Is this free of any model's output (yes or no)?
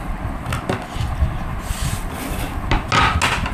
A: yes